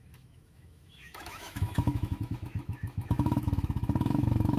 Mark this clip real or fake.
fake